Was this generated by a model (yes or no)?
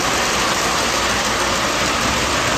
no